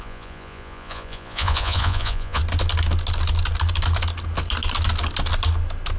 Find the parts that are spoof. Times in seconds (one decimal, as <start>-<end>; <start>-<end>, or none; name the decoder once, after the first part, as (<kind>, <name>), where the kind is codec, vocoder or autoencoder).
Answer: 0.0-2.4 (vocoder, Vocos)